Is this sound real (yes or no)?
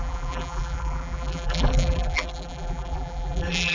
no